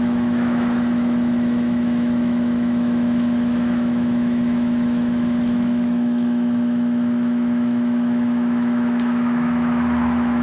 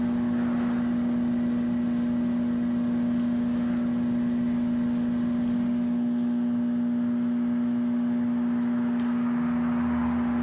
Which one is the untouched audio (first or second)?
second